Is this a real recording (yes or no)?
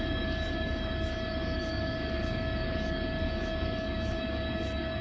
no